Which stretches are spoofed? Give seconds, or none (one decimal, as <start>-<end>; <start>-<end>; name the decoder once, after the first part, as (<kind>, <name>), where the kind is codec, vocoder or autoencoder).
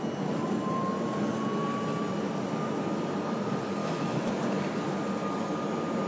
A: 3.8-4.4 (autoencoder, DAC-VAE)